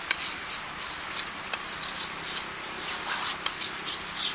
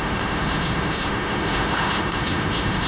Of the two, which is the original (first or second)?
first